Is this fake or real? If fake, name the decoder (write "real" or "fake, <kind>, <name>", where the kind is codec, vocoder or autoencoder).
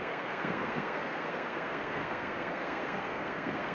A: fake, codec, SNAC